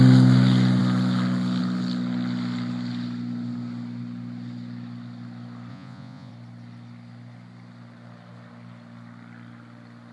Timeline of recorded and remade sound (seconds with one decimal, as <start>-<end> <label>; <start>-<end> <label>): 0.0-5.7 recorded; 5.7-6.3 remade; 6.3-10.1 recorded